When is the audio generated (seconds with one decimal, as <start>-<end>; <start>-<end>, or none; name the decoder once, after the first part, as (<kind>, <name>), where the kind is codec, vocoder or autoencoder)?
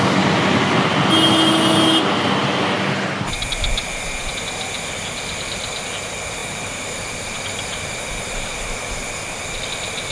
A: 6.4-7.1 (vocoder, BigVGAN v2)